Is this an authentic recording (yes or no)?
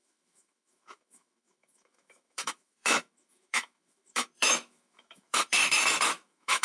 no